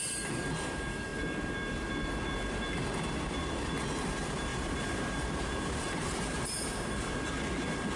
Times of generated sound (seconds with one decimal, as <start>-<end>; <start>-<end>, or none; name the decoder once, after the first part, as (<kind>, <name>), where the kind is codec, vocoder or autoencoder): 4.5-7.1 (vocoder, BigVGAN v2)